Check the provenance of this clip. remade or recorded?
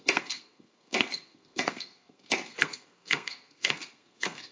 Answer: remade